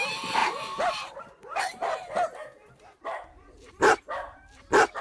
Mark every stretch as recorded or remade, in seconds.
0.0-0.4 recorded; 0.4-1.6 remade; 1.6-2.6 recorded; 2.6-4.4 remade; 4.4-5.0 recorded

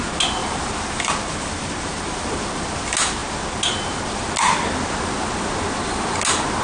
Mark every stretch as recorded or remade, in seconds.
0.0-0.4 recorded; 0.4-2.5 remade; 2.5-6.6 recorded

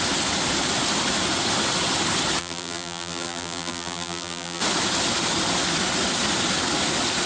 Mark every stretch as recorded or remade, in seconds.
0.0-2.4 recorded; 2.4-4.6 remade; 4.6-7.3 recorded

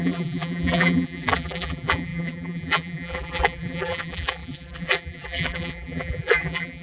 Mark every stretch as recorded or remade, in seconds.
0.0-6.8 remade

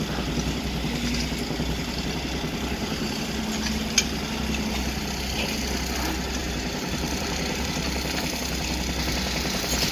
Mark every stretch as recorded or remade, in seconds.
0.0-2.8 recorded; 2.8-3.4 remade; 3.4-6.4 recorded; 6.4-7.7 remade; 7.7-9.9 recorded

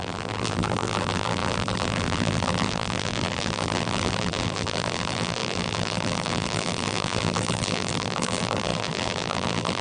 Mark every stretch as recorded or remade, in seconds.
0.0-9.8 remade